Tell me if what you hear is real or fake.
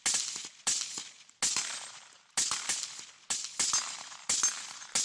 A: real